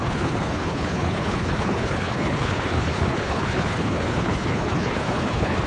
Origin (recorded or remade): remade